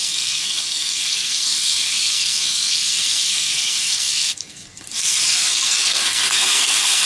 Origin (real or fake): fake